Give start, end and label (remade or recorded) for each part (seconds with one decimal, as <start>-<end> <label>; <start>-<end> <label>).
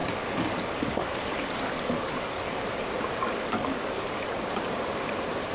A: 0.0-2.6 remade; 2.6-3.2 recorded; 3.2-4.4 remade; 4.4-5.5 recorded